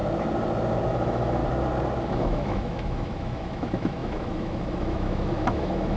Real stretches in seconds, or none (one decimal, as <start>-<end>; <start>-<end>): 0.0-0.9; 1.4-2.1